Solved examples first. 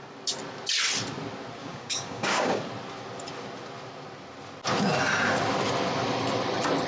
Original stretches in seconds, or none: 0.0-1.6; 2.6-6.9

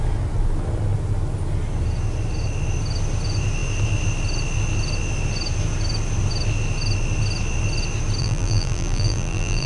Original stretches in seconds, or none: 0.0-8.2

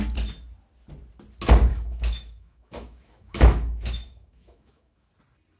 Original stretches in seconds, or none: 0.0-1.7; 5.1-5.6

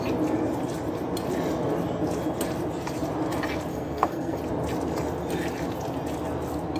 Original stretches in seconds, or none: 0.0-3.7; 4.4-6.8

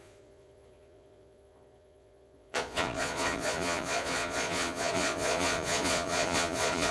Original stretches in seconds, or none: none